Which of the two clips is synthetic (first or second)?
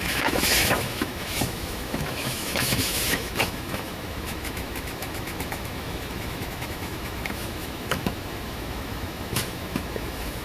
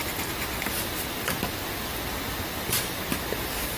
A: first